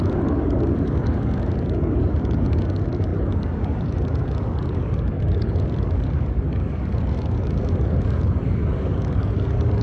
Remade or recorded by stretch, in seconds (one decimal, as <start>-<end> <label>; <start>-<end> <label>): 0.0-9.8 remade